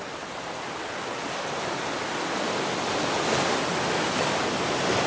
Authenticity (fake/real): real